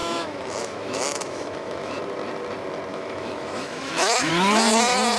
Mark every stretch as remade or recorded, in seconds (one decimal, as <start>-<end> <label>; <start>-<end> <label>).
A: 0.0-1.9 remade; 1.9-2.9 recorded; 2.9-4.3 remade; 4.3-5.2 recorded